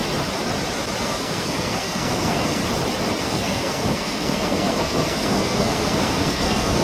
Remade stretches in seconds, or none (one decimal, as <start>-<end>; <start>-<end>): 1.0-2.6; 3.2-6.8